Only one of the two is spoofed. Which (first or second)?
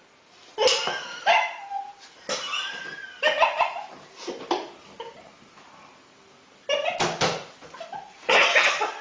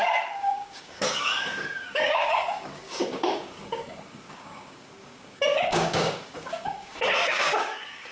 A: second